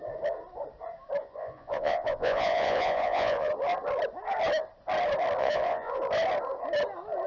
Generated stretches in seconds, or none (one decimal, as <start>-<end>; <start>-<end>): 1.2-3.5; 5.4-6.0